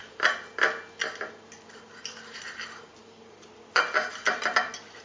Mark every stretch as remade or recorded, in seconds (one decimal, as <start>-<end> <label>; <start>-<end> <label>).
0.0-5.0 recorded